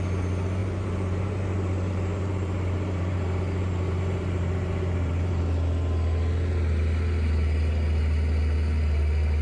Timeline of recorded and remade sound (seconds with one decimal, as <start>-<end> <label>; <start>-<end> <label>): 0.0-0.6 recorded; 0.6-5.4 remade; 5.4-9.4 recorded